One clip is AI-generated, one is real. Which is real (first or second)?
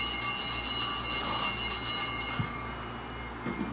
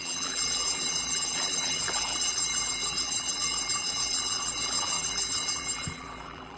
first